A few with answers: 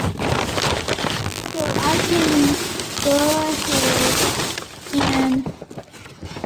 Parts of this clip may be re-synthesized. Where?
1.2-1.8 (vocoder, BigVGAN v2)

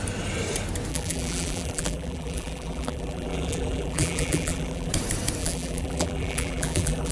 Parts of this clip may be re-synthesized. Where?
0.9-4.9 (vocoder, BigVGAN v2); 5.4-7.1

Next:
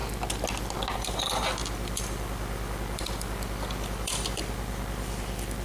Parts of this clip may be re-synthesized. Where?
0.9-5.6 (vocoder, BigVGAN v2)